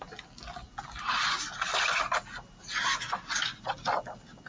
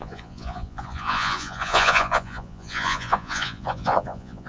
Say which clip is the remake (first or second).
second